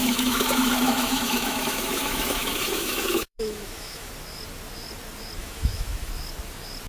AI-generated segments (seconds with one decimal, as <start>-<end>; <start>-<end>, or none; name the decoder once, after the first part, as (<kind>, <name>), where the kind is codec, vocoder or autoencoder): 0.0-4.1 (autoencoder, DAC-VAE); 5.4-6.1